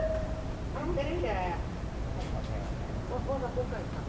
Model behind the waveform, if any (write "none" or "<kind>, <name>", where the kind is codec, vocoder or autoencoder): none